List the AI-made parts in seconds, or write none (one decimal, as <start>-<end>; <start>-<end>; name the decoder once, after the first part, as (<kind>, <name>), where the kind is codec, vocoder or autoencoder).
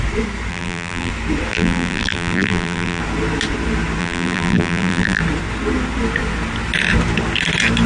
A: 0.5-1.1 (vocoder, BigVGAN v2); 1.5-3.0; 4.0-5.2